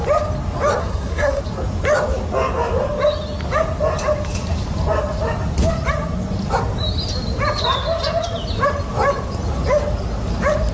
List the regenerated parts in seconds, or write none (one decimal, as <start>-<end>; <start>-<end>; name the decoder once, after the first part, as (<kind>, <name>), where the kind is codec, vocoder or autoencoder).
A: 0.8-1.4 (codec, SNAC)